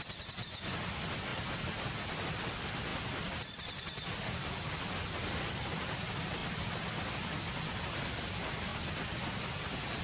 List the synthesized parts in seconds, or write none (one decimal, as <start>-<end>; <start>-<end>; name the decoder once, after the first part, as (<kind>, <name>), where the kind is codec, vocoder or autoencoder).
0.0-1.3 (vocoder, BigVGAN v2); 1.9-2.9; 4.5-6.4; 8.0-10.0